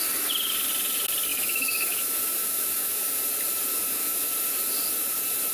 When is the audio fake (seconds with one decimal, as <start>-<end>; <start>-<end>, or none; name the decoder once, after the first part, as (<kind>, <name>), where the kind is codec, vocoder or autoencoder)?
1.3-3.2 (autoencoder, DAC-VAE); 3.7-4.3

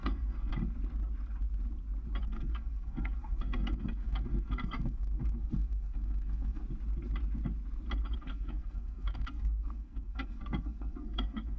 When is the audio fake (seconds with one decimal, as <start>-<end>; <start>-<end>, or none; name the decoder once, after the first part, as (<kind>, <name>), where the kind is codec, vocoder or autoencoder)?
0.0-0.5 (codec, SNAC); 2.2-6.6; 8.1-11.6

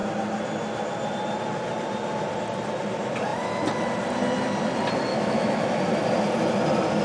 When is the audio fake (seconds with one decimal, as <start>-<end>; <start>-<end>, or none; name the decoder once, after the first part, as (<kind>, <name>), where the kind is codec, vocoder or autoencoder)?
5.1-5.8 (autoencoder, DAC-VAE)

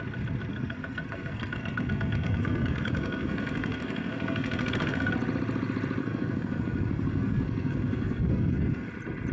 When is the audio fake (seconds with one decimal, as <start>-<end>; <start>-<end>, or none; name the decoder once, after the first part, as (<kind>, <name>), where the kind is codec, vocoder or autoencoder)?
0.5-5.1 (codec, SNAC); 6.0-8.9

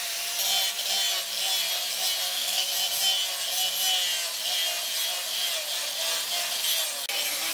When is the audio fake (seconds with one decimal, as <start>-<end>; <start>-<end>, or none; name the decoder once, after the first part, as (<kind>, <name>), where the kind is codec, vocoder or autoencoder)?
2.2-2.7 (codec, SNAC)

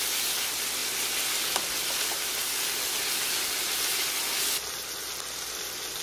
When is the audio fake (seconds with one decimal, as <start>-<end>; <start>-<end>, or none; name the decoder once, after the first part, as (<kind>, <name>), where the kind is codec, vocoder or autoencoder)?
none

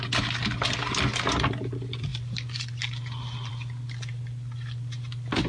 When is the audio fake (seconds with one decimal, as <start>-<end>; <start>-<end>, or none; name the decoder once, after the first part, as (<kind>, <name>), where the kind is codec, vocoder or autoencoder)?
none

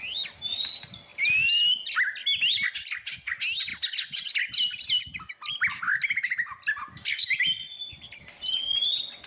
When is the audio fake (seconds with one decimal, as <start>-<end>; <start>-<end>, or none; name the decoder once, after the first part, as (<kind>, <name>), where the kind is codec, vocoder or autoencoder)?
none